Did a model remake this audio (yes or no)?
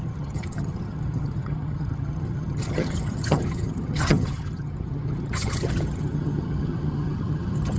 yes